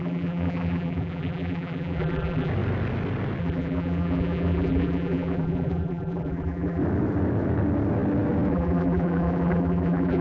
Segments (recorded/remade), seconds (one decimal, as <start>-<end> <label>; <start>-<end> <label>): 0.0-2.5 remade; 2.5-3.4 recorded; 3.4-6.8 remade; 6.8-8.5 recorded; 8.5-10.2 remade